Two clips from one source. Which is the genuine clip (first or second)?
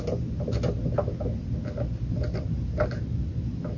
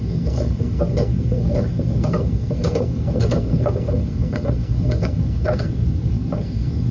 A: first